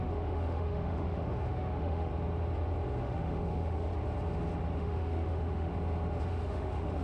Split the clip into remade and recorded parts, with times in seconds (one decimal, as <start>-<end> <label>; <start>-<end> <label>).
0.0-2.1 remade; 2.1-3.0 recorded; 3.0-3.9 remade; 3.9-4.8 recorded; 4.8-5.7 remade; 5.7-6.3 recorded; 6.3-7.0 remade